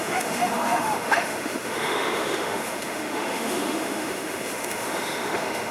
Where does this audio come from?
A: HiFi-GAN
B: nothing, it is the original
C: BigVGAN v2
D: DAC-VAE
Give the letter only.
D